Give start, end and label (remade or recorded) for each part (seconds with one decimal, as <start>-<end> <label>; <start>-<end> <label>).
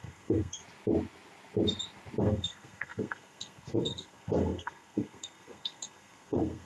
0.0-0.6 remade; 0.6-2.2 recorded; 2.2-6.7 remade